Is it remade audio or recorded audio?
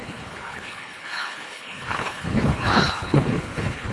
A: remade